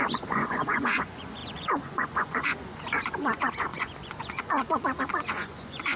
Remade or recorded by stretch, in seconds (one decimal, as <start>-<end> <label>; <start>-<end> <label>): 0.0-6.0 remade